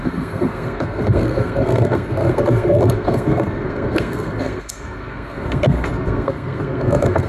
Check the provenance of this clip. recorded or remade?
remade